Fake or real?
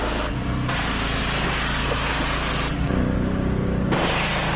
real